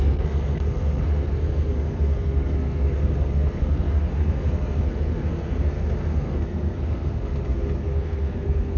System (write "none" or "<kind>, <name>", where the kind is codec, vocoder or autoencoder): codec, SNAC